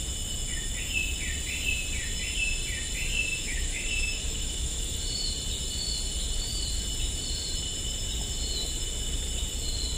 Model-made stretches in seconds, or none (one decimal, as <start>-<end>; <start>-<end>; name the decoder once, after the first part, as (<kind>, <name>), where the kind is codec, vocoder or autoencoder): 3.3-5.0 (autoencoder, DAC-VAE)